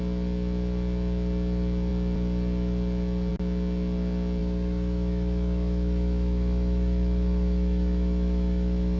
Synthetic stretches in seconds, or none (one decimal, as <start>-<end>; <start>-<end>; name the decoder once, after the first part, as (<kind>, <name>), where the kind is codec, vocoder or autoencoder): 4.4-9.0 (autoencoder, DAC-VAE)